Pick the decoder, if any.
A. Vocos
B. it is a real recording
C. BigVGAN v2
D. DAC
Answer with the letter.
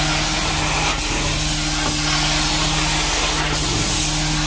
B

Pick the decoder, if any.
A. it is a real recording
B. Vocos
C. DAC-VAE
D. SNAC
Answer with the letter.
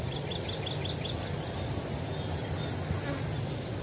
A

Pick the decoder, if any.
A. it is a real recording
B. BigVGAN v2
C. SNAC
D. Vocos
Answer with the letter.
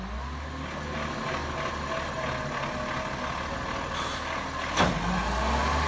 A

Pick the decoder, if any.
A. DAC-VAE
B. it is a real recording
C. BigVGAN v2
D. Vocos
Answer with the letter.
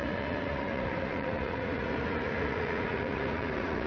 D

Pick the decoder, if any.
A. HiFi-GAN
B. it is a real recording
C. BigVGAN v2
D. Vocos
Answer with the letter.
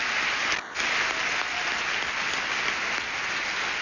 B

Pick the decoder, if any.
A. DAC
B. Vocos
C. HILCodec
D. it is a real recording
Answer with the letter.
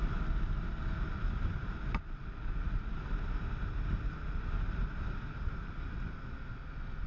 D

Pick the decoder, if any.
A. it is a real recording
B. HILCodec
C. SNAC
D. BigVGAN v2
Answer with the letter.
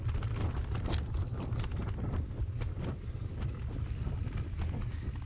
A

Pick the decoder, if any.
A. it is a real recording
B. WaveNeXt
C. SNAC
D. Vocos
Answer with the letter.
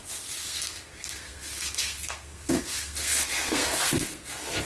C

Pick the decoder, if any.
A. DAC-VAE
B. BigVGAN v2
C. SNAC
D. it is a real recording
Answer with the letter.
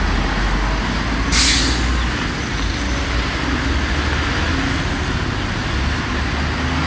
D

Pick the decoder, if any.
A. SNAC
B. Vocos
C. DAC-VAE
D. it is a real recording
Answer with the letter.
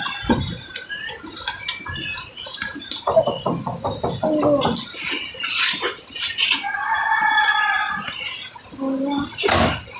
D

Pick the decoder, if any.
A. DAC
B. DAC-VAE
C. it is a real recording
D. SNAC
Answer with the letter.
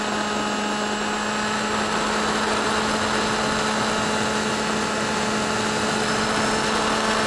C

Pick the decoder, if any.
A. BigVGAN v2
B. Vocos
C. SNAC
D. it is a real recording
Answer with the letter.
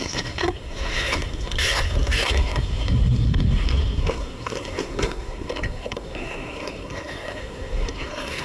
C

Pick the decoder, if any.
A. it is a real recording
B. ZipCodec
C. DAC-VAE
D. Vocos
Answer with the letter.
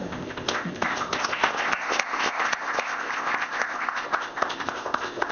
B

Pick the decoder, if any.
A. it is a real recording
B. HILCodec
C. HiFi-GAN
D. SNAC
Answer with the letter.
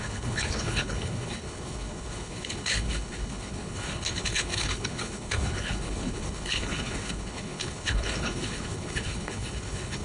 B